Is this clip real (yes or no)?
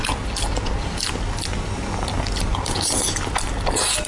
yes